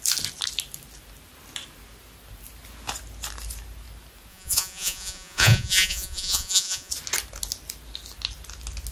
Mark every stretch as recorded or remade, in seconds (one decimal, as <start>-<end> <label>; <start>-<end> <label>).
0.0-4.3 recorded; 4.3-6.9 remade; 6.9-8.9 recorded